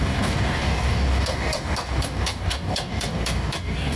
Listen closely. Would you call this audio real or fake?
fake